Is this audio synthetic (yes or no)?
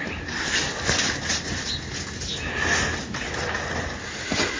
no